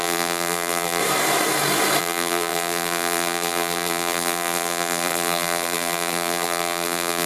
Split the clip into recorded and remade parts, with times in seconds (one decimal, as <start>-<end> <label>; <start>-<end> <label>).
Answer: 0.0-1.0 remade; 1.0-2.0 recorded; 2.0-7.3 remade